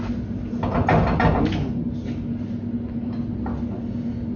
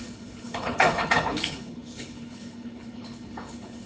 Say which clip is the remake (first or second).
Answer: second